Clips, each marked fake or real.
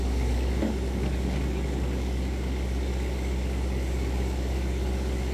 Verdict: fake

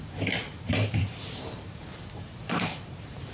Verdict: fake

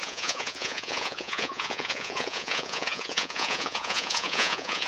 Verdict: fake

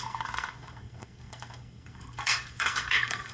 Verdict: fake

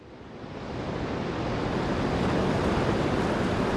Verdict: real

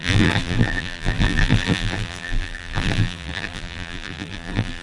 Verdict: fake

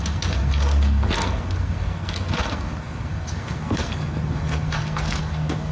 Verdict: fake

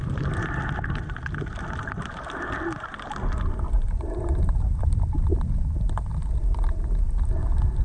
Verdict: real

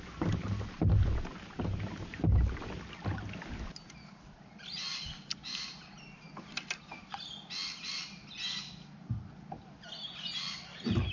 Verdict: real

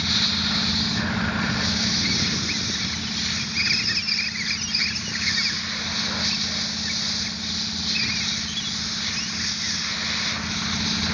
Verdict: real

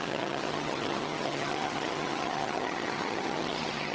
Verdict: fake